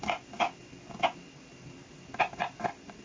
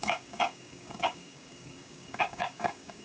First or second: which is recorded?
first